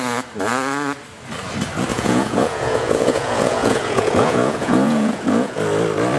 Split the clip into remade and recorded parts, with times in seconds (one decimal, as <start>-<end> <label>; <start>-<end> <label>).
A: 0.0-1.9 recorded; 1.9-5.6 remade; 5.6-6.2 recorded